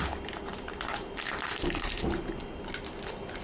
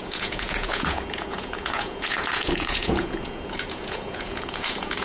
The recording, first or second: first